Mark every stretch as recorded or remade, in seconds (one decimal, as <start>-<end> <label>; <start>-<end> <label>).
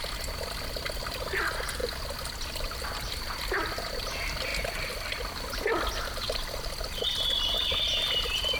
0.0-8.6 recorded